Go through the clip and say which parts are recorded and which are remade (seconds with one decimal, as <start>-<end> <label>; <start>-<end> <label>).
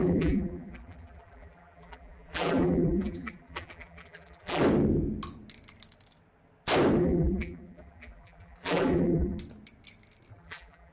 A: 0.0-4.6 remade; 4.6-7.0 recorded; 7.0-9.4 remade; 9.4-10.3 recorded; 10.3-10.9 remade